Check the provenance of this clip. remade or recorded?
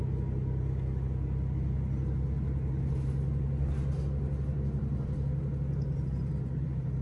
recorded